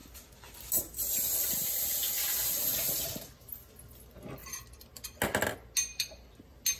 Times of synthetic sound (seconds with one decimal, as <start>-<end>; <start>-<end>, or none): 4.4-5.2